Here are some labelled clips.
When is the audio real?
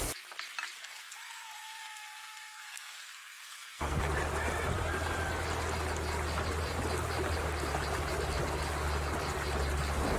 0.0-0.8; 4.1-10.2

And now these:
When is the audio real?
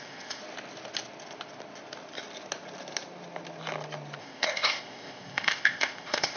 0.4-4.2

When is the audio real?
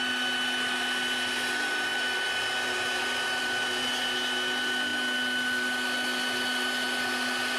0.0-7.6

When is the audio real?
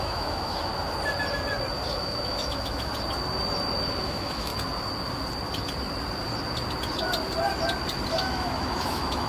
0.7-1.9; 2.9-4.0; 4.5-8.1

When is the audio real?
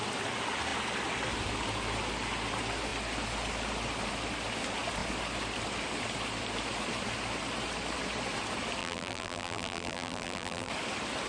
0.0-8.8; 10.7-11.3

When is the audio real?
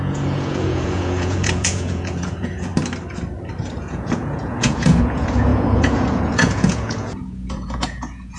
2.7-3.8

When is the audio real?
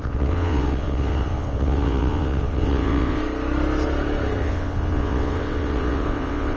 3.2-4.4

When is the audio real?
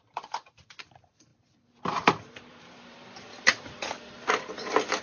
none